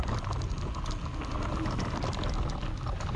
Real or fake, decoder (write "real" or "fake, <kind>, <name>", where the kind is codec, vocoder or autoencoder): real